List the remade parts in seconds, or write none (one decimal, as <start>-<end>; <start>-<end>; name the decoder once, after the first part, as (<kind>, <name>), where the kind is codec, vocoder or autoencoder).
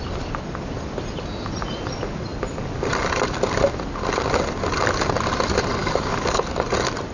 5.8-6.4 (codec, DAC)